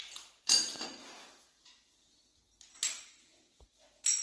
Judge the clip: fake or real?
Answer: real